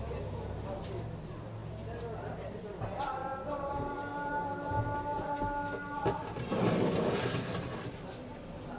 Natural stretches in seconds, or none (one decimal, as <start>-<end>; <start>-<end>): 0.0-8.8